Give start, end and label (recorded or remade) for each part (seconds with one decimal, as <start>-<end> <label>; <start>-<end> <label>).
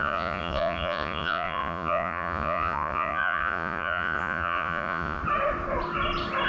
0.0-5.2 remade; 5.2-6.5 recorded